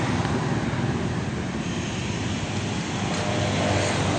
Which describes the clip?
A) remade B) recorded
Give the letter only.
B